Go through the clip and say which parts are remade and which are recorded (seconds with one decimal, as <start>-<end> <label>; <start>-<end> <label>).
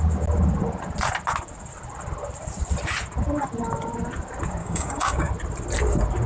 0.0-4.6 recorded; 4.6-5.3 remade; 5.3-6.3 recorded